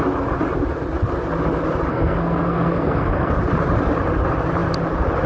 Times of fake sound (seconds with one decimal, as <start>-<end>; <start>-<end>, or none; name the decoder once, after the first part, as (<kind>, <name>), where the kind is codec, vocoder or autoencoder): 1.9-3.3 (codec, SNAC)

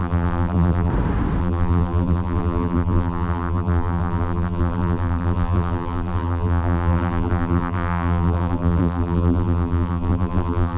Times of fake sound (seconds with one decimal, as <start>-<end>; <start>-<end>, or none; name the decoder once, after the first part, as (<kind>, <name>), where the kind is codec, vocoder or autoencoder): 0.0-0.9 (vocoder, BigVGAN v2); 1.4-10.8